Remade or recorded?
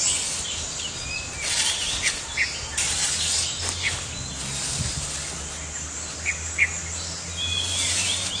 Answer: recorded